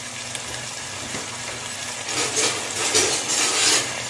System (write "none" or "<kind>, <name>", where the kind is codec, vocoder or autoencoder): none